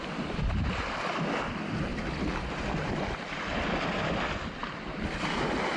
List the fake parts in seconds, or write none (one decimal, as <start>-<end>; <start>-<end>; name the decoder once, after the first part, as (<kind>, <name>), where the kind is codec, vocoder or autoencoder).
none